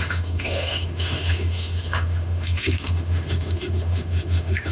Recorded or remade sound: remade